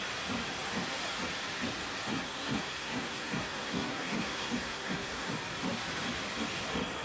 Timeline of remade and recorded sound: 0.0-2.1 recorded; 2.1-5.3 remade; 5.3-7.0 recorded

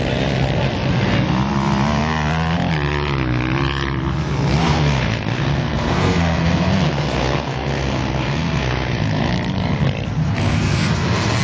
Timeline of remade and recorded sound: 0.0-4.6 recorded; 4.6-9.3 remade; 9.3-10.2 recorded; 10.2-11.4 remade

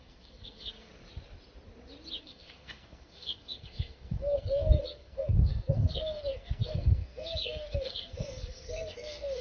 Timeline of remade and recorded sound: 0.0-0.9 remade; 0.9-2.2 recorded; 2.2-9.4 remade